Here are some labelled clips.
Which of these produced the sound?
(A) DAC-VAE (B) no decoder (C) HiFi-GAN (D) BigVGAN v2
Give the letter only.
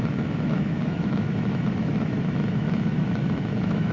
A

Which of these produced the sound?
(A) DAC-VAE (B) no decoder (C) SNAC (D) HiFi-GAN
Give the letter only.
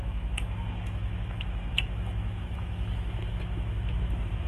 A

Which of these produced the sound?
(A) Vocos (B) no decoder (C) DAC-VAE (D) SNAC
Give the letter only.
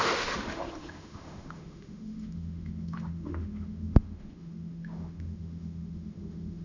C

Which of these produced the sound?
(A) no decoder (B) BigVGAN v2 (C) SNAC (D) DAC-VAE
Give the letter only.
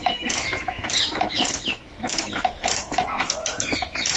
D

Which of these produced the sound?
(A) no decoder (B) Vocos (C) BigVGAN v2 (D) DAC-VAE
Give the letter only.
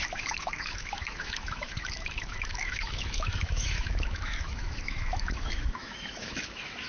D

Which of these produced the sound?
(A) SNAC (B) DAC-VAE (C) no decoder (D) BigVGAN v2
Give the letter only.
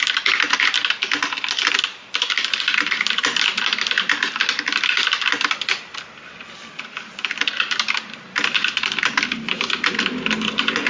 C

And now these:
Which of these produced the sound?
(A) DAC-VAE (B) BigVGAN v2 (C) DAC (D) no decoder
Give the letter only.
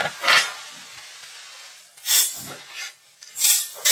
D